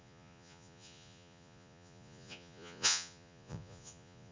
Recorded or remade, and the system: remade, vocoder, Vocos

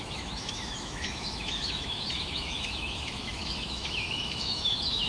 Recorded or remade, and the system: remade, autoencoder, DAC-VAE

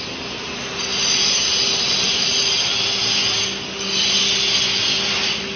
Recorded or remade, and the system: recorded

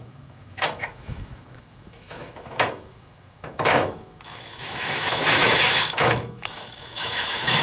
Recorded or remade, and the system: remade, autoencoder, DAC-VAE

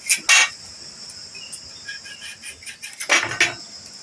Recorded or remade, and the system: recorded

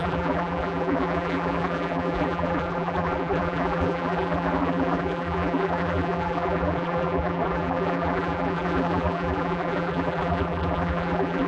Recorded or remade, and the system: remade, vocoder, BigVGAN v2